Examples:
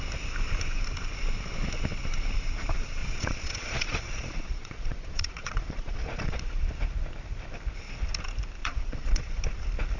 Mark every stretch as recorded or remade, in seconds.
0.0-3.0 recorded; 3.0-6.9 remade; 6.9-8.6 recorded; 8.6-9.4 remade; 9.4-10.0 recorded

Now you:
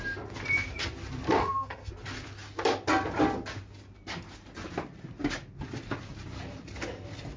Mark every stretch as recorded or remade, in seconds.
0.0-1.4 recorded; 1.4-1.9 remade; 1.9-7.4 recorded